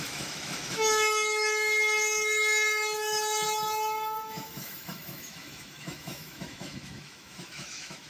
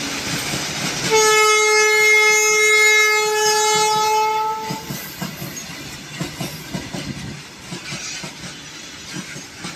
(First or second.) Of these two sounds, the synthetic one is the first